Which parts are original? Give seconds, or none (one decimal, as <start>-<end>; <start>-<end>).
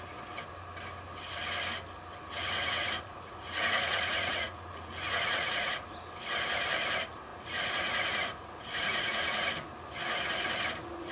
0.0-2.4; 6.0-7.3; 9.5-11.1